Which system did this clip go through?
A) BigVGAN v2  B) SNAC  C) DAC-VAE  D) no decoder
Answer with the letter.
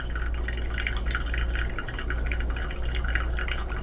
D